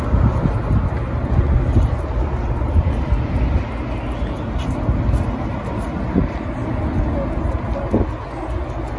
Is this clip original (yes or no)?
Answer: yes